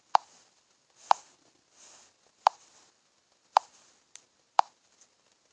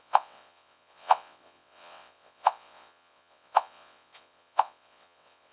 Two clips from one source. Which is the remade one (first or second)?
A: second